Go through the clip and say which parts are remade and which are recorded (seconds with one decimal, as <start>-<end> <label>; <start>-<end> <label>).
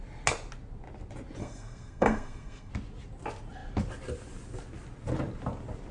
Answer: 0.0-1.4 recorded; 1.4-2.7 remade; 2.7-5.9 recorded